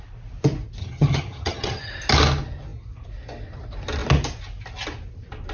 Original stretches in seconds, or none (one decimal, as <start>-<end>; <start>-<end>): 0.0-0.8; 1.9-5.5